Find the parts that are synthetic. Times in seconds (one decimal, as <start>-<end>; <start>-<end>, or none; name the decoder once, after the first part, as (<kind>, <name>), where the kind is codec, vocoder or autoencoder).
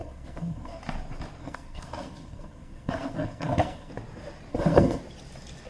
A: 0.0-0.8 (codec, SNAC); 1.4-3.9; 4.5-5.0